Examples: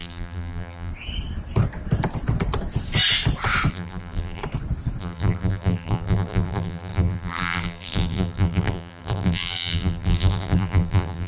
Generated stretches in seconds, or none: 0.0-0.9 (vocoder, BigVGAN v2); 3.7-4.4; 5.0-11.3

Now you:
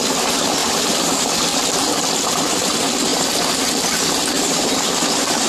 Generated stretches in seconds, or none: 0.6-1.1 (vocoder, BigVGAN v2); 1.5-2.3; 3.1-5.5

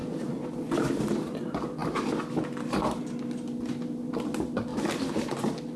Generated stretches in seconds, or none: none